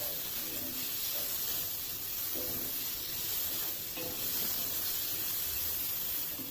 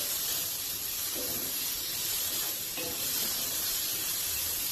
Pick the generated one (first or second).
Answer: second